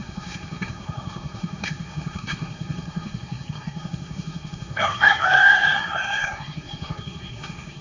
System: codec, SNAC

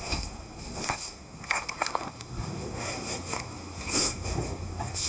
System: codec, SNAC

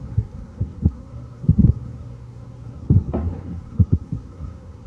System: codec, SNAC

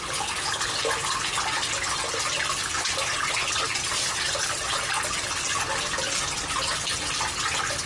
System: none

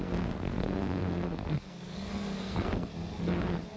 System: codec, SNAC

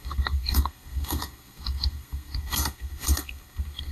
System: codec, SNAC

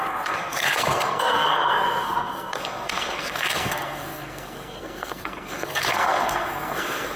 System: codec, SNAC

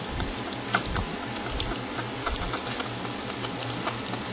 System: none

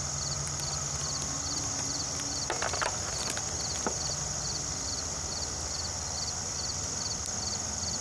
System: none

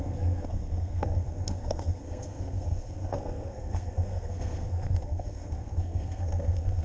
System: codec, SNAC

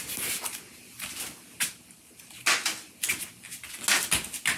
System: none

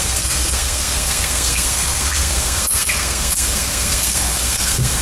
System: codec, SNAC